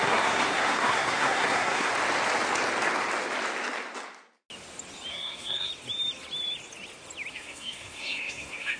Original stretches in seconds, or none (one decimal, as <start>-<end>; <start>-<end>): 1.9-5.1; 5.7-7.3